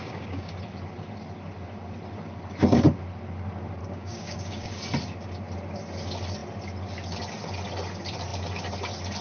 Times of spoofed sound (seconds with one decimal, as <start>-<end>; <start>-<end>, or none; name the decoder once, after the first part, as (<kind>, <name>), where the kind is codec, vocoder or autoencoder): 0.0-0.5 (codec, DAC); 3.8-4.7